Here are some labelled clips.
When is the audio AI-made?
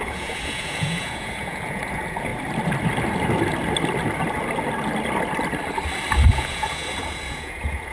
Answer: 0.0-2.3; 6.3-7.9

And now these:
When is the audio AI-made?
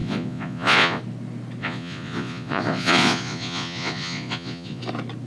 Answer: 0.0-1.0; 1.6-4.8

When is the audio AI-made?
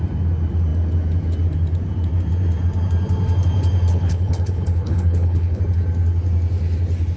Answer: 3.9-5.6